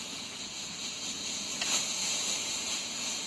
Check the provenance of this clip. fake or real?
fake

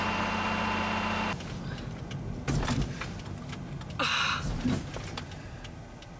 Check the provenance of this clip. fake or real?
real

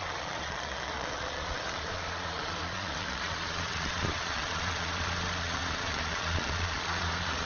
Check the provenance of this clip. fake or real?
fake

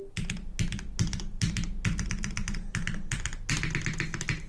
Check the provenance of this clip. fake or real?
real